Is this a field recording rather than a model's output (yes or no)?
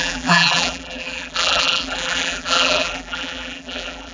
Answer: no